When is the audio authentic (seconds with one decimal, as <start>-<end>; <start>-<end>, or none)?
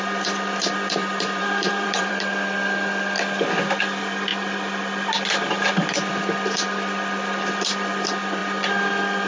0.0-1.0; 2.1-9.3